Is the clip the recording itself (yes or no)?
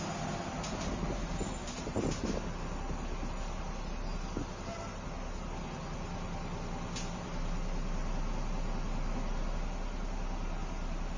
yes